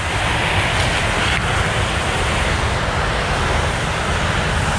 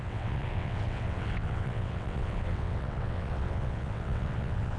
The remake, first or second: second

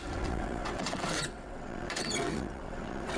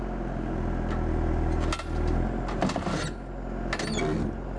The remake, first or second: first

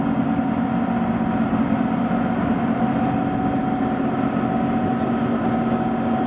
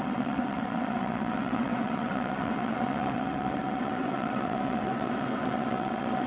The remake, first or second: second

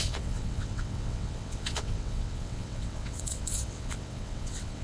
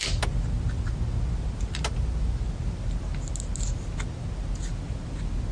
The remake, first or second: first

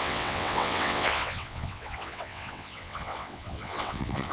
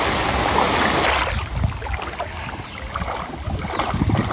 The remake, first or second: first